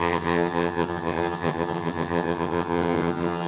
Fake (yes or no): yes